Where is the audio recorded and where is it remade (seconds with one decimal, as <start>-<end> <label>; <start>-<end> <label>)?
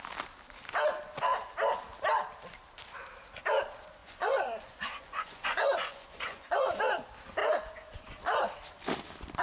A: 0.0-4.0 recorded; 4.0-6.8 remade; 6.8-7.4 recorded; 7.4-8.2 remade; 8.2-9.4 recorded